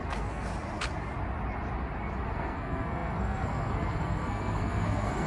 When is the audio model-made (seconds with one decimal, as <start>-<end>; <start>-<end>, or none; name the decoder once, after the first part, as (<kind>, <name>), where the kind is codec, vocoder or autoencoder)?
0.0-0.5 (codec, SNAC); 2.3-5.3